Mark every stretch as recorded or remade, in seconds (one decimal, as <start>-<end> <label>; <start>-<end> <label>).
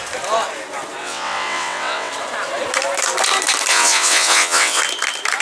0.0-1.0 recorded; 1.0-2.1 remade; 2.1-3.7 recorded; 3.7-4.8 remade; 4.8-5.4 recorded